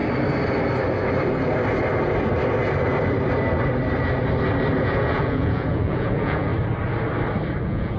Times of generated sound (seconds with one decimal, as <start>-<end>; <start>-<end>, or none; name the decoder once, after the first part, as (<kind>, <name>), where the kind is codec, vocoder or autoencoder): 4.8-6.5 (vocoder, Vocos); 7.6-8.0